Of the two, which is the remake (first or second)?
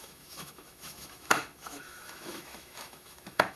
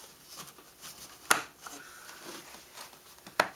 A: first